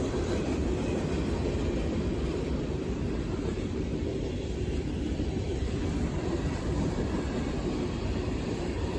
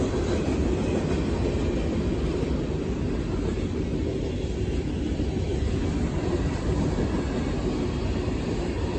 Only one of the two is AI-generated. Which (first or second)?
first